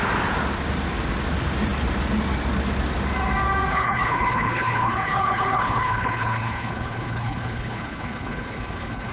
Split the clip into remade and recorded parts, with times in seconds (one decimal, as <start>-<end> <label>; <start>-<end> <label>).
0.0-3.7 recorded; 3.7-9.1 remade